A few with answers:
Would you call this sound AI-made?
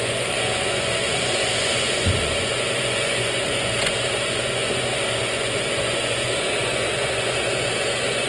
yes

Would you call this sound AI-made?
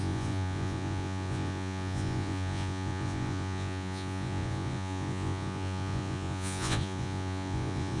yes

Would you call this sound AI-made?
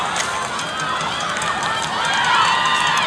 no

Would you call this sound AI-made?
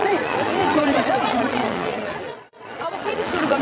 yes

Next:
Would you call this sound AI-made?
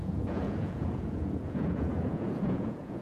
yes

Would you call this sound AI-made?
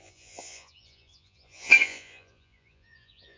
yes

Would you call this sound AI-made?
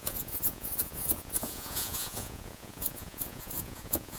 yes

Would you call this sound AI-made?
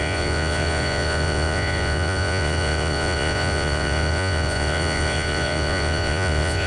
yes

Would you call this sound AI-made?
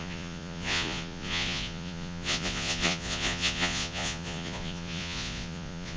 yes